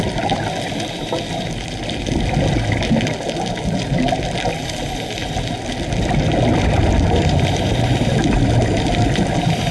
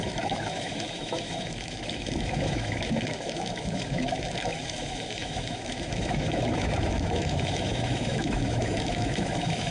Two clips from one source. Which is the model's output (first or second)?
second